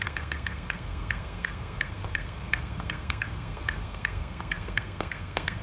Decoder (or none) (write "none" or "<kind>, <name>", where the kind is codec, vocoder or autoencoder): codec, SNAC